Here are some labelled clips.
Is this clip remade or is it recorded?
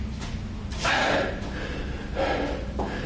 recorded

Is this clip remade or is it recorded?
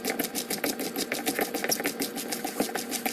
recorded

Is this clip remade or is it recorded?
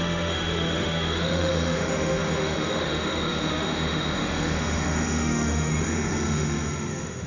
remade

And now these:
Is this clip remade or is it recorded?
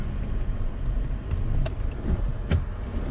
recorded